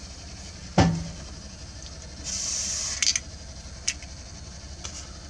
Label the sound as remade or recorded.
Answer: recorded